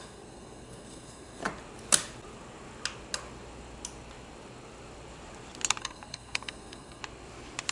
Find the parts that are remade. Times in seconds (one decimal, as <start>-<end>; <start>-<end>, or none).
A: 0.0-1.4; 5.8-7.0